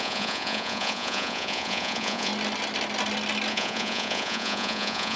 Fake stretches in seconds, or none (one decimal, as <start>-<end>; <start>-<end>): 0.0-2.3; 3.5-5.2